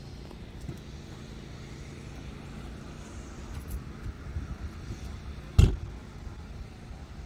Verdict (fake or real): real